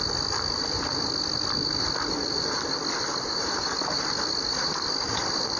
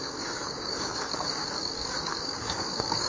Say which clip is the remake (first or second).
second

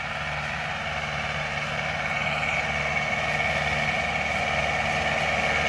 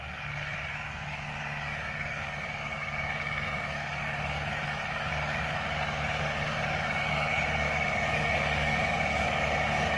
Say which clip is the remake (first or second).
second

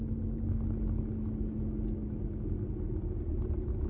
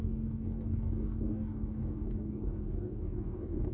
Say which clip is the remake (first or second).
second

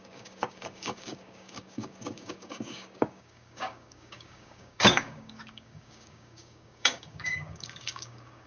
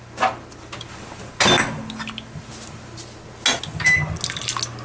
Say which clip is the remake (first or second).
first